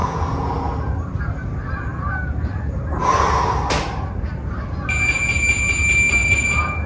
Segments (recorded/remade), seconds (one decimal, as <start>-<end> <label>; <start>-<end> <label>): 0.0-0.5 remade; 0.5-6.2 recorded; 6.2-6.9 remade